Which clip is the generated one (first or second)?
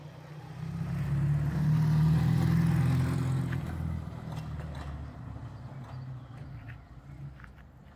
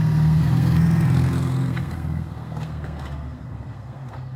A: second